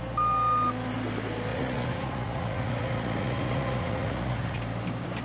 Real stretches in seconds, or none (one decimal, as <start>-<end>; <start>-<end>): 0.0-1.5; 4.6-5.2